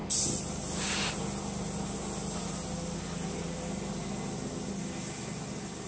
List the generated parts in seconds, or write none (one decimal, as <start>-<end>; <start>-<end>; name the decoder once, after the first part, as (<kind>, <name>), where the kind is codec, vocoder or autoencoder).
none

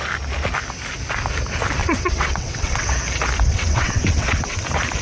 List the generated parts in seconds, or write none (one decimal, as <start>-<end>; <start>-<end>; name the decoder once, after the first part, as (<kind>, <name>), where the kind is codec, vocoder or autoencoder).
1.8-2.9 (vocoder, WaveNeXt); 3.5-4.6

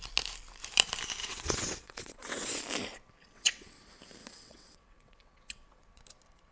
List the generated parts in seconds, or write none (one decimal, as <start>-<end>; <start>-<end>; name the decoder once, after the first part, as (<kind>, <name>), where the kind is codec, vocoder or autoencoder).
1.2-2.6 (vocoder, WaveNeXt); 3.2-3.8; 4.2-6.0

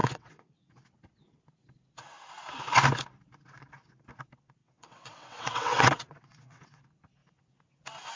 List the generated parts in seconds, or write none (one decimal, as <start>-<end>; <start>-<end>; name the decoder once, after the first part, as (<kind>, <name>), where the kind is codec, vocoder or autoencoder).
0.0-0.7 (vocoder, WaveNeXt); 4.6-6.8

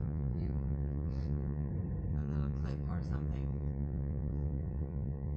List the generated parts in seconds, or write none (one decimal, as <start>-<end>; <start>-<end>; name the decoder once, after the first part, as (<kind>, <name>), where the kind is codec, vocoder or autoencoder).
0.0-1.7 (vocoder, WaveNeXt); 2.1-5.4

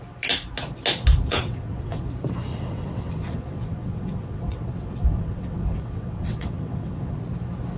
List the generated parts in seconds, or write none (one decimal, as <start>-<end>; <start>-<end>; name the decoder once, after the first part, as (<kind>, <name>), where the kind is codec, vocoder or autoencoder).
1.3-2.0 (vocoder, WaveNeXt); 2.5-7.2

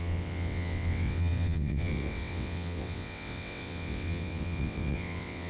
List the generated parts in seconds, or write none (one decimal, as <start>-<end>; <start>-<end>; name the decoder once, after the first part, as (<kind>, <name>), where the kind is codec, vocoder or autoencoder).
0.0-5.5 (vocoder, WaveNeXt)